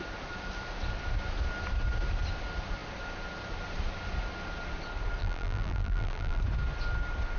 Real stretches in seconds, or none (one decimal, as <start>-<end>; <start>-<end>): 0.0-5.2; 6.4-7.4